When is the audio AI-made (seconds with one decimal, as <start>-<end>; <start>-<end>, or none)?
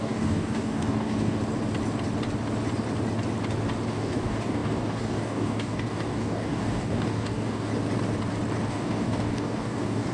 0.0-1.4; 3.9-7.7; 8.7-10.1